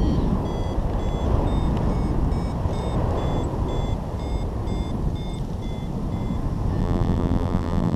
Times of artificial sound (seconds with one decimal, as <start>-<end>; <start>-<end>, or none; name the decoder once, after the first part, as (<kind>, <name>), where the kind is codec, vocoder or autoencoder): 6.8-8.0 (vocoder, BigVGAN v2)